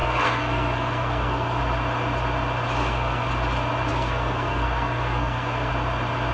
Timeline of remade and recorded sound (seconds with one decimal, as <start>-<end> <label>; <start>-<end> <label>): 0.0-1.6 remade; 1.6-2.8 recorded; 2.8-3.3 remade; 3.3-3.9 recorded; 3.9-5.7 remade; 5.7-6.3 recorded